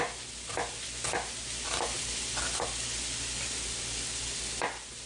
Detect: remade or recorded recorded